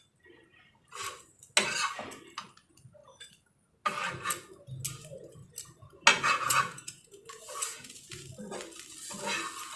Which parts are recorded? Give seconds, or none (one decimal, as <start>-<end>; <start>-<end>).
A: 0.0-6.1; 8.2-9.8